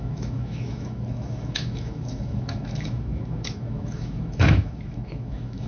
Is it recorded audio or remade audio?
remade